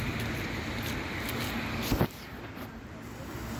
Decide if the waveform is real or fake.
real